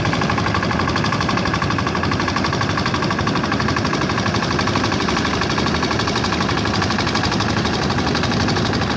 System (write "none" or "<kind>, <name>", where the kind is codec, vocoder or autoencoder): none